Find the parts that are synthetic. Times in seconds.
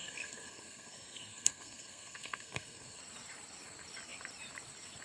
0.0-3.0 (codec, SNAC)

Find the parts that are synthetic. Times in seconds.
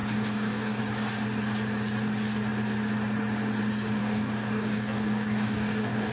0.0-0.8 (codec, DAC); 4.0-6.1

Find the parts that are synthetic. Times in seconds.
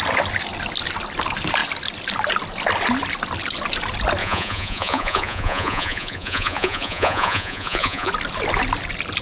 4.2-8.1 (vocoder, Vocos)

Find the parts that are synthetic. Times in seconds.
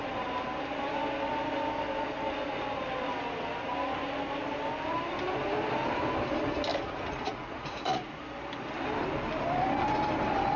6.7-8.1 (vocoder, Vocos)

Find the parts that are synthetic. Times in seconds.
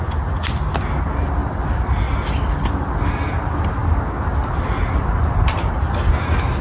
none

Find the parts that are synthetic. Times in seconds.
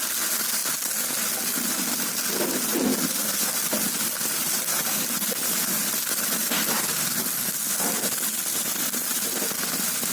none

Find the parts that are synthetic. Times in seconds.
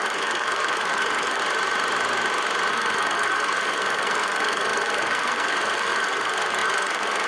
0.0-1.4 (codec, SNAC); 2.7-7.3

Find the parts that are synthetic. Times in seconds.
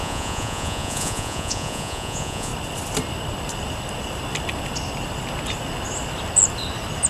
0.0-2.5 (vocoder, Vocos)